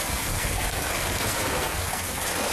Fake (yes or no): yes